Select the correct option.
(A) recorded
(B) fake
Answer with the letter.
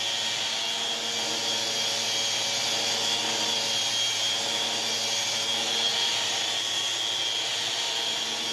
A